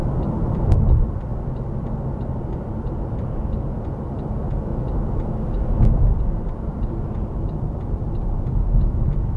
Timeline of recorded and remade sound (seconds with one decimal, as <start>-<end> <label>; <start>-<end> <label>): 0.0-1.3 remade; 1.3-1.8 recorded; 1.8-4.7 remade; 4.7-6.2 recorded; 6.2-9.4 remade